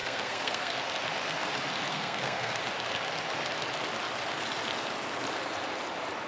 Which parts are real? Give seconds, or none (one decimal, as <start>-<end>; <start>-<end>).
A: 0.8-1.9; 2.6-6.3